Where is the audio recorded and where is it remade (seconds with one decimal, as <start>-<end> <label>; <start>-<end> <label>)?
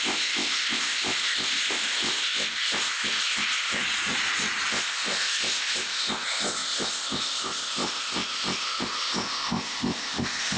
0.0-3.8 remade; 3.8-4.7 recorded; 4.7-10.6 remade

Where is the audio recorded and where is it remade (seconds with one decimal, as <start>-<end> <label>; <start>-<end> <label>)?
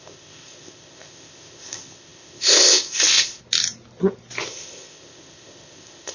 0.0-3.4 remade; 3.4-4.5 recorded; 4.5-6.1 remade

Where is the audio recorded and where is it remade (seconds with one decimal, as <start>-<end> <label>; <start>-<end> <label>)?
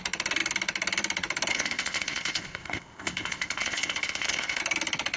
0.0-1.5 recorded; 1.5-4.6 remade; 4.6-5.2 recorded